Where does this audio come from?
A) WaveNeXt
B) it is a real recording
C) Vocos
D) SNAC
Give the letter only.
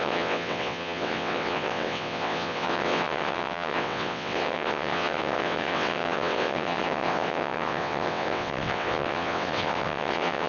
A